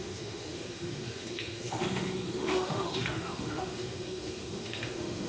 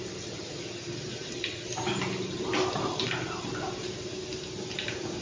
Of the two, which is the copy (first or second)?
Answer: first